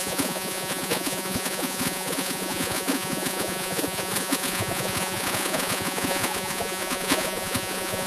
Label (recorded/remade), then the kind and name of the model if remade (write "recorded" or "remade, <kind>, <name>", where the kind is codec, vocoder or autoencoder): remade, vocoder, Vocos